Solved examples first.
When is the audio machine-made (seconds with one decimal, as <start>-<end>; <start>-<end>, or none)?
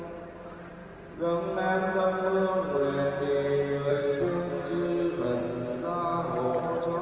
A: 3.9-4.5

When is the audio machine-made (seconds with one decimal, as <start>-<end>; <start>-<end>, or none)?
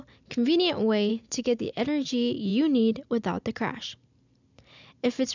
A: 1.1-1.6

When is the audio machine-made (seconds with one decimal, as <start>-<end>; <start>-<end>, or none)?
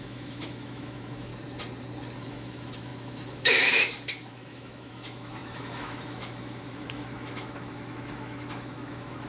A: 0.0-1.3; 2.2-9.3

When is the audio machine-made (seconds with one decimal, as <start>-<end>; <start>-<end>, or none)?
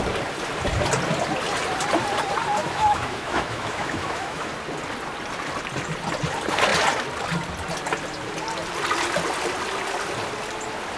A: 2.6-4.5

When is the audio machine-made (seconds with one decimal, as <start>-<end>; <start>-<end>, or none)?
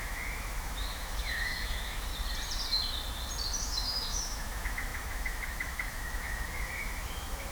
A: 0.0-2.1; 3.6-7.5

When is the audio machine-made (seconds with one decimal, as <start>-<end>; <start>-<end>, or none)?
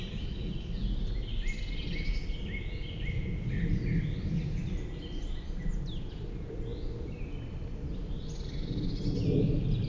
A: none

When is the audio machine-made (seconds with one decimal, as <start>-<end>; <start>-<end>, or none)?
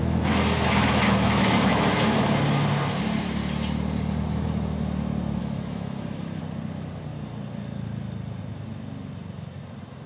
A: 0.0-2.2; 5.4-6.4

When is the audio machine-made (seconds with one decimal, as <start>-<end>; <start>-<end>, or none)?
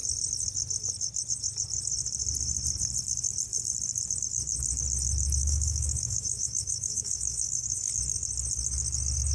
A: 5.4-7.9